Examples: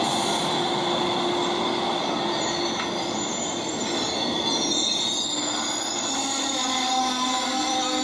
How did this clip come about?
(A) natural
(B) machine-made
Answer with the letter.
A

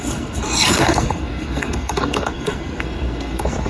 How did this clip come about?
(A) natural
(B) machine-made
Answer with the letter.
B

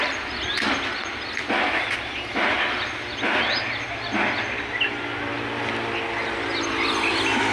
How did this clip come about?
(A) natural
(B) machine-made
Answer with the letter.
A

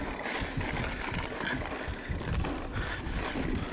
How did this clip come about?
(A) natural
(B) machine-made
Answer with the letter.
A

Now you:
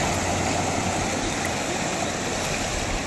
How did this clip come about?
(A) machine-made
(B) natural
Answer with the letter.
B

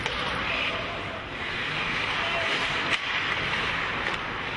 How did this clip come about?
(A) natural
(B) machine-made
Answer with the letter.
A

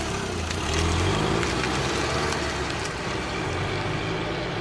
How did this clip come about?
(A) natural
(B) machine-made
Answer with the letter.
A